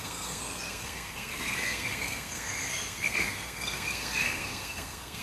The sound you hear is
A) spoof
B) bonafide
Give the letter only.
A